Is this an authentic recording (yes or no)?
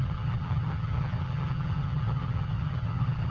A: no